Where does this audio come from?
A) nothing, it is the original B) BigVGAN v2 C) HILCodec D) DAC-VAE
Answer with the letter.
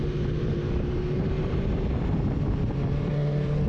B